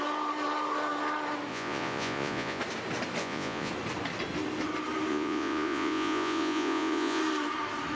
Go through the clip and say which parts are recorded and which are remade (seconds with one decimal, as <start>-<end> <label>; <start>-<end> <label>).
0.0-1.5 recorded; 1.5-2.6 remade; 2.6-3.2 recorded; 3.2-3.7 remade; 3.7-5.1 recorded; 5.1-7.2 remade; 7.2-8.0 recorded